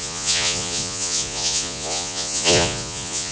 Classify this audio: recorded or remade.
remade